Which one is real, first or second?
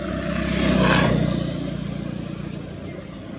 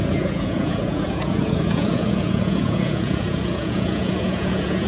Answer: first